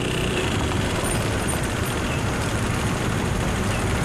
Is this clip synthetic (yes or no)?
no